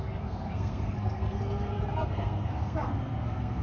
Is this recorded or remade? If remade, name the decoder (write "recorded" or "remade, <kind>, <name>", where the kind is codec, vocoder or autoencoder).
remade, codec, SNAC